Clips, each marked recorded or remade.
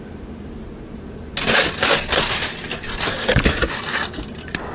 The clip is recorded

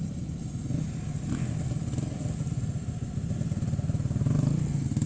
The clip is recorded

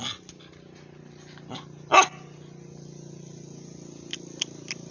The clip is recorded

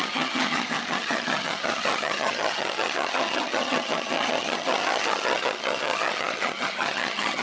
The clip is remade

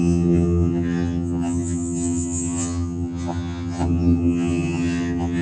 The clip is remade